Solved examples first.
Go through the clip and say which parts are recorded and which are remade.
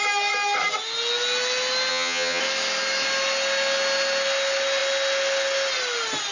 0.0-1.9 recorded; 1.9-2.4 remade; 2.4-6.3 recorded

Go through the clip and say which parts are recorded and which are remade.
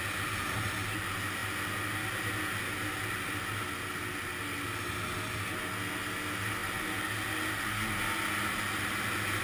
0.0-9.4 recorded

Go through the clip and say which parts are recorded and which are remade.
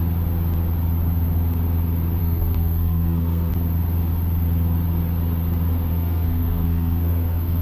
0.0-2.2 recorded; 2.2-3.5 remade; 3.5-5.9 recorded; 5.9-7.6 remade